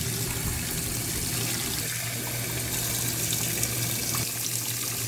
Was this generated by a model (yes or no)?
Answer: no